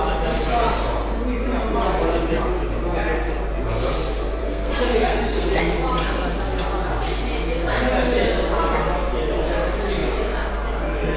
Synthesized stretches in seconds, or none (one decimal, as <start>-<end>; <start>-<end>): 4.4-5.6